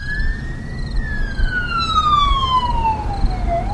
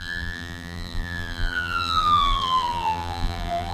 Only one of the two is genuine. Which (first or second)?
first